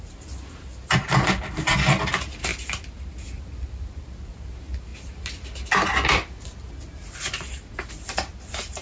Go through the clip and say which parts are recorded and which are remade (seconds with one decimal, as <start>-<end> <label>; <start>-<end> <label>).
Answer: 0.0-8.8 recorded